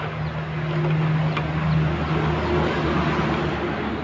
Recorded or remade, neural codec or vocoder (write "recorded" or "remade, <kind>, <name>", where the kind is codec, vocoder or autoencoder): recorded